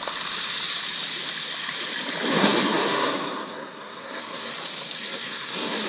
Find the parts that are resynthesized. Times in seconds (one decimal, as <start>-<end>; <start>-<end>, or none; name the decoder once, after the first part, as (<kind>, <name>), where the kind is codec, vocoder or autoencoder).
2.3-4.5 (codec, SNAC); 5.0-5.9